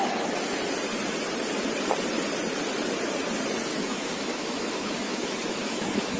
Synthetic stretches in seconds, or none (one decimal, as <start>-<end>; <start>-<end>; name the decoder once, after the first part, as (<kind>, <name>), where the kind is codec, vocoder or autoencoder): 3.7-6.2 (autoencoder, DAC-VAE)